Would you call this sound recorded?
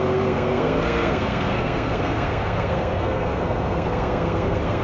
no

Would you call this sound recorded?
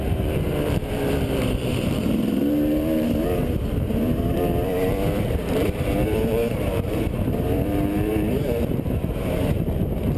no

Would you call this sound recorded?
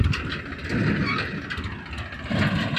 yes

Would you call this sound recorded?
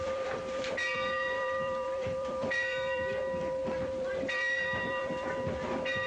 no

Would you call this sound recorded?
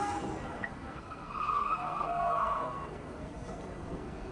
no